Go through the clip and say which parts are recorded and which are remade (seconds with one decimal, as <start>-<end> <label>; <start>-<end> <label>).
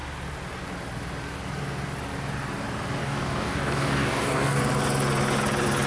0.0-3.0 recorded; 3.0-4.6 remade; 4.6-5.9 recorded